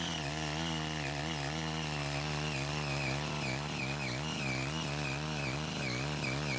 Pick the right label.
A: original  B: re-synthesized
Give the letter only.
A